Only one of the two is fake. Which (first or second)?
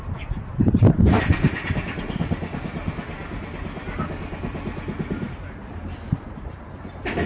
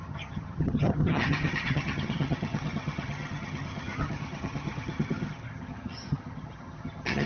second